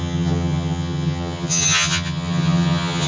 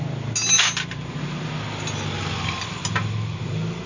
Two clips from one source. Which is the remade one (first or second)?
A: first